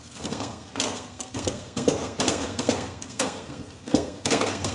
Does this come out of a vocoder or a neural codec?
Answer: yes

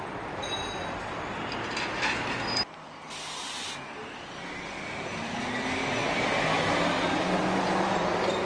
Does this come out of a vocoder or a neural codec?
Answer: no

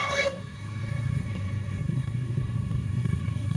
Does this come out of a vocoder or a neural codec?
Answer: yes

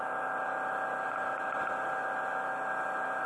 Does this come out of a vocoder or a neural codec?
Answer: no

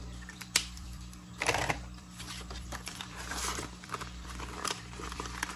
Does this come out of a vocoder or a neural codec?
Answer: yes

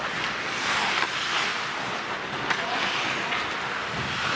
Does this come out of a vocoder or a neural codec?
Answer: no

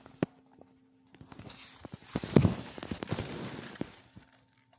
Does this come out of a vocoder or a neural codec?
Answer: yes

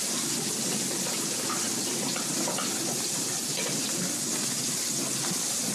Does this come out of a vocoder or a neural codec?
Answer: no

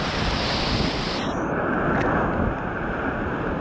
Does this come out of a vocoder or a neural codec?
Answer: no